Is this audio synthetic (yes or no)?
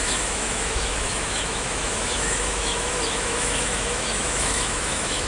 yes